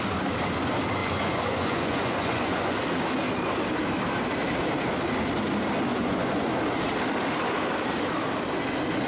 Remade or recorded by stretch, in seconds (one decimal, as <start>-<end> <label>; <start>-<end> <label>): 0.0-1.0 recorded; 1.0-2.8 remade; 2.8-5.9 recorded; 5.9-6.5 remade; 6.5-9.1 recorded